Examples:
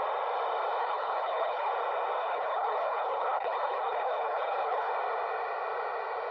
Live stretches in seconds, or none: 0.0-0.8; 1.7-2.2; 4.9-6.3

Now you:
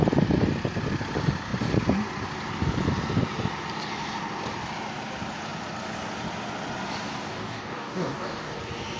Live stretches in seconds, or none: 0.0-7.3; 8.6-9.0

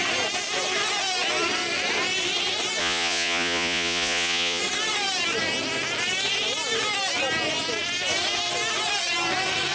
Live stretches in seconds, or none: 0.0-2.8; 4.6-9.7

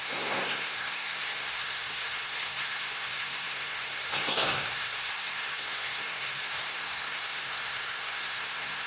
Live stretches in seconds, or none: none

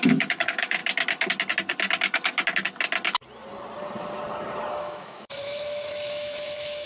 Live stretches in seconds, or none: 0.8-4.7